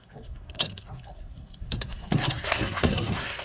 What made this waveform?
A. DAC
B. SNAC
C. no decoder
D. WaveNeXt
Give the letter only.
B